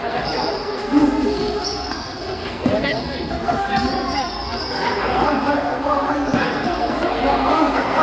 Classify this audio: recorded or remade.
remade